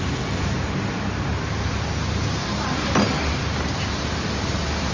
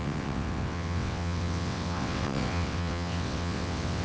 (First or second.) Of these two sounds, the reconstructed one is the second